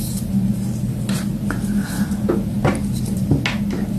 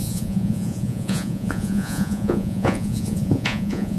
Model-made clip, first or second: second